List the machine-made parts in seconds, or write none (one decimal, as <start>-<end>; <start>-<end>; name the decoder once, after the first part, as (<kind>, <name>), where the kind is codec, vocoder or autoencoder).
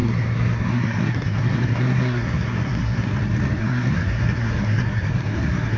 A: 0.0-3.1 (codec, SNAC); 3.6-5.8